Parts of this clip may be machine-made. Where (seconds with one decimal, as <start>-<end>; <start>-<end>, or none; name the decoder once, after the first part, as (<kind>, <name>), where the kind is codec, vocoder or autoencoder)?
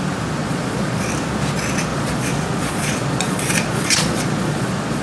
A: 0.4-1.1 (vocoder, Vocos); 1.9-5.0